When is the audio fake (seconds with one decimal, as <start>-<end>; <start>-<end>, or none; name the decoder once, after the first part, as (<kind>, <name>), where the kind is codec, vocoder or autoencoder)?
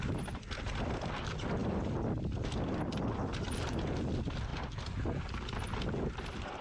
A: none